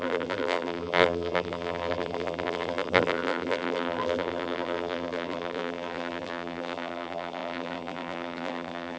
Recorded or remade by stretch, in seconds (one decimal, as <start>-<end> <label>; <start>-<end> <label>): 0.0-9.0 remade